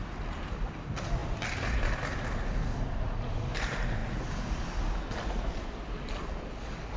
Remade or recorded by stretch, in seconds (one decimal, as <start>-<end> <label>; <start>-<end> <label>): 0.0-7.0 recorded